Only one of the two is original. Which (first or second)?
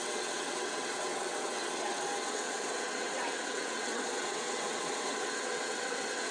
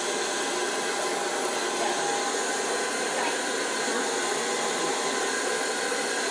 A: second